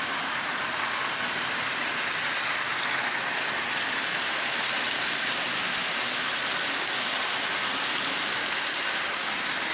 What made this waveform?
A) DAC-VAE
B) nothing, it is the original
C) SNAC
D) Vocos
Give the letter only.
B